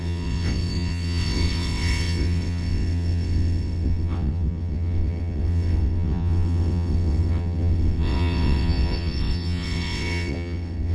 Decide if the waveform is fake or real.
fake